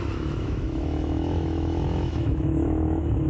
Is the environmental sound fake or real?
fake